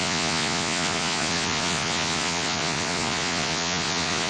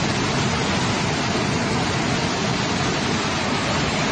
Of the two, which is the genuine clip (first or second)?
second